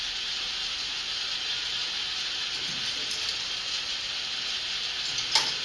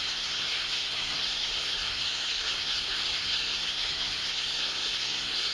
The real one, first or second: first